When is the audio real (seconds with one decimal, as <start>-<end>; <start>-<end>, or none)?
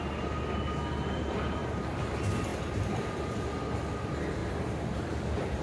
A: 0.0-1.6; 2.1-4.4